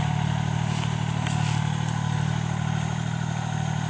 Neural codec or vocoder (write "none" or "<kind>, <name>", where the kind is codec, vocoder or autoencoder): none